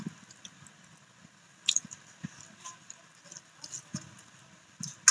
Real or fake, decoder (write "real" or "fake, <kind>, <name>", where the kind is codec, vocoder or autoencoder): real